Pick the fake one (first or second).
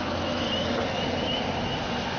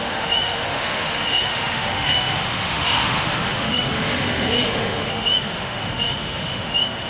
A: second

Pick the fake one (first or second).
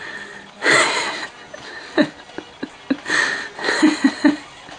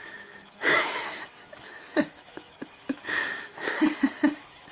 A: second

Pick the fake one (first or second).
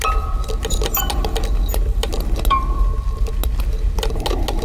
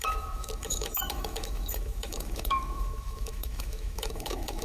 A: second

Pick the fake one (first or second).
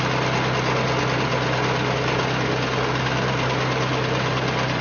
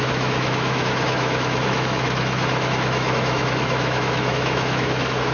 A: second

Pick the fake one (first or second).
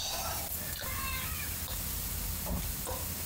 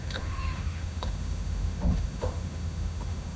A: second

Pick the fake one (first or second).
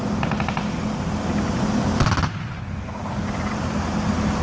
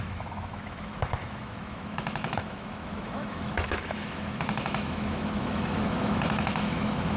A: second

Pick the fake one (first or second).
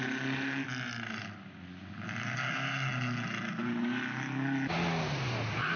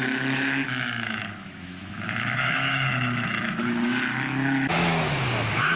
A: second